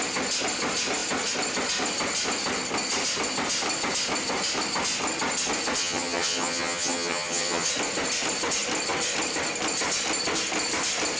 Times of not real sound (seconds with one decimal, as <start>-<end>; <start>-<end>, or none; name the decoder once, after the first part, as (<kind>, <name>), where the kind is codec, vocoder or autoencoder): 5.8-7.7 (vocoder, HiFi-GAN)